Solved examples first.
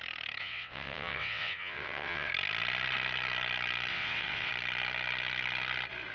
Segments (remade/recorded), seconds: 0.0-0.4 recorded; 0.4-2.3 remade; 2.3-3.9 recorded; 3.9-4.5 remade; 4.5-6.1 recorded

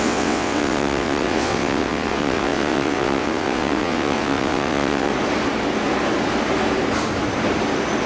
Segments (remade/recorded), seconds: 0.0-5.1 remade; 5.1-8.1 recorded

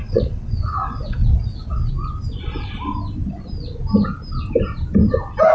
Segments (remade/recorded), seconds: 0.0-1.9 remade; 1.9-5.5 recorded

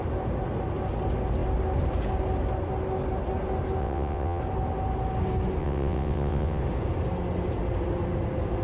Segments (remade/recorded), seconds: 0.0-3.8 recorded; 3.8-4.4 remade; 4.4-5.6 recorded; 5.6-6.6 remade; 6.6-8.6 recorded

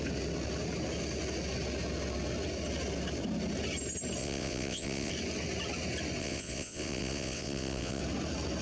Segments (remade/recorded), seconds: 0.0-4.2 recorded; 4.2-5.1 remade; 5.1-6.2 recorded; 6.2-8.0 remade; 8.0-8.6 recorded

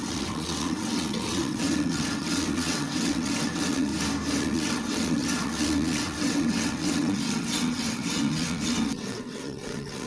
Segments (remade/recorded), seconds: 0.0-3.9 remade; 3.9-4.4 recorded; 4.4-10.1 remade